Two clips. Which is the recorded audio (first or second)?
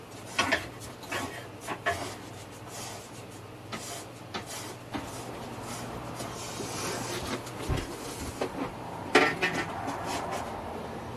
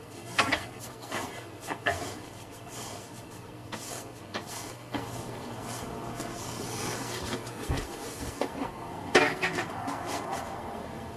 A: first